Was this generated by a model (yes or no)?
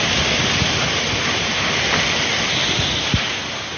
no